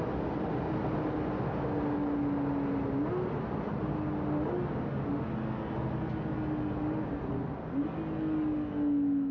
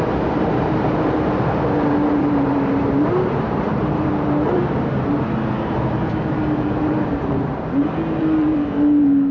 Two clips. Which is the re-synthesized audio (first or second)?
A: second